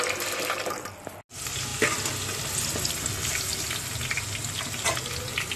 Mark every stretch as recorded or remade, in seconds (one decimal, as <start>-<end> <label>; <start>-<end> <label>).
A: 0.0-5.6 recorded